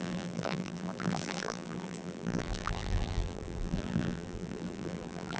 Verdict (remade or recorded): remade